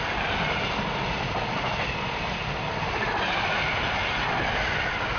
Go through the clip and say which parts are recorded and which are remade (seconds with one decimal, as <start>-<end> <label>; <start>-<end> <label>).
0.0-5.2 recorded